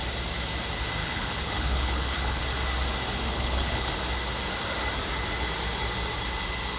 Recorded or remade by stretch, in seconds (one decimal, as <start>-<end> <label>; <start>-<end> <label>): 0.0-1.0 recorded; 1.0-2.4 remade; 2.4-3.3 recorded; 3.3-3.9 remade; 3.9-6.8 recorded